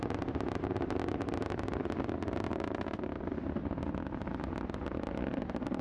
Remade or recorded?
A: recorded